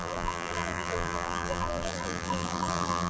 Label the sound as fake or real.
fake